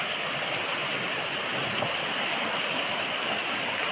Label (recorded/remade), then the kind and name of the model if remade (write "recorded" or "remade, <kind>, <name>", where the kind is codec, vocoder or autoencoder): recorded